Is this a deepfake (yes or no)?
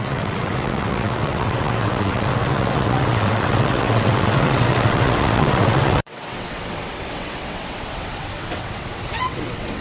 yes